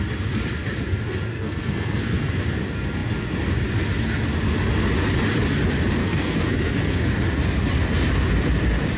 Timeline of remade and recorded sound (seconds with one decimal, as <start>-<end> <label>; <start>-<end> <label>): 0.0-1.3 recorded; 1.3-2.3 remade; 2.3-6.0 recorded; 6.0-7.1 remade; 7.1-9.0 recorded

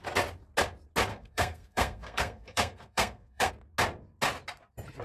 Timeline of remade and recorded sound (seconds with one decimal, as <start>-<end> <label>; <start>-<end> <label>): 0.0-1.1 recorded; 1.1-3.5 remade; 3.5-5.0 recorded

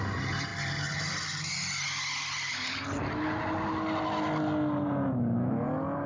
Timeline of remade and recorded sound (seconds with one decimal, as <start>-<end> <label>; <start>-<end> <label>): 0.0-6.1 recorded

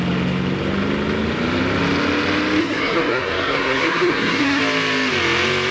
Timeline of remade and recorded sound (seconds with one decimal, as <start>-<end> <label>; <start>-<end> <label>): 0.0-2.6 recorded; 2.6-4.6 remade; 4.6-5.7 recorded

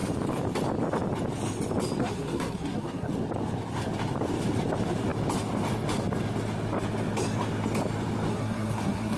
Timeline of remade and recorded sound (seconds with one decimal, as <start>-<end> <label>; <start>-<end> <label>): 0.0-2.0 recorded; 2.0-3.1 remade; 3.1-8.3 recorded; 8.3-9.2 remade

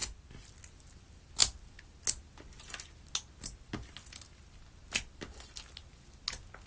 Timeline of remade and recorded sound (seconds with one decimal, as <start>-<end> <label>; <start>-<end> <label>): 0.0-6.7 recorded